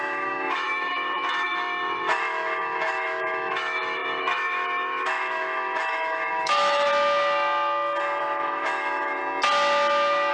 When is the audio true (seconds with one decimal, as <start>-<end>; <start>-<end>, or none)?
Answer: 6.9-8.2; 9.2-10.3